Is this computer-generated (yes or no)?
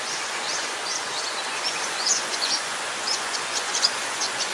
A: yes